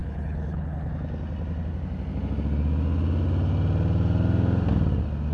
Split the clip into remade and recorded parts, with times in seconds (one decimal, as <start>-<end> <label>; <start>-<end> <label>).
0.0-0.9 remade; 0.9-5.3 recorded